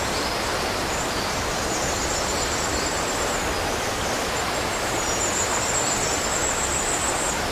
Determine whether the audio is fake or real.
real